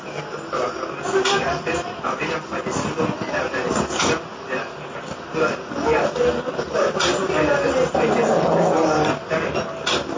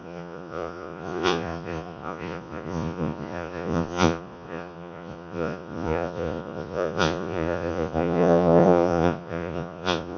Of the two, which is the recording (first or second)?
first